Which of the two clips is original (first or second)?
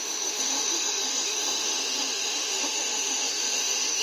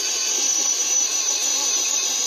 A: second